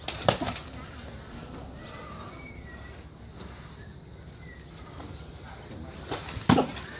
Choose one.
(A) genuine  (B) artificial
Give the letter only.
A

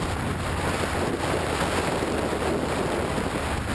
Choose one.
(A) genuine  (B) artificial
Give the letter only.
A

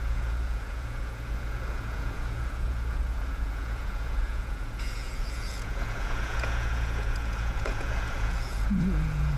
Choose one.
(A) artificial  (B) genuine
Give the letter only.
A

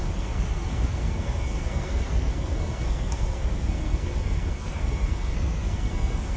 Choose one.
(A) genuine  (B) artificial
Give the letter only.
B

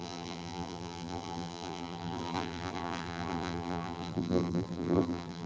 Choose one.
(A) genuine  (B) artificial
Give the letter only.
B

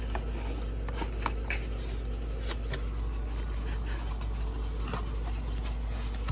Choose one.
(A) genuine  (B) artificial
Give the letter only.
A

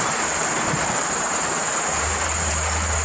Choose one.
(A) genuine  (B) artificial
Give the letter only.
B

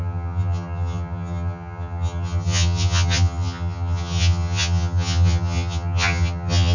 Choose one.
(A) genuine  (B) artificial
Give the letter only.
B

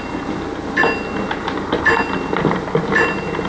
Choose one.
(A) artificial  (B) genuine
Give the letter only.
B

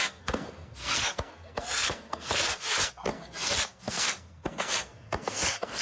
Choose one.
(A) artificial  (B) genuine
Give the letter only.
A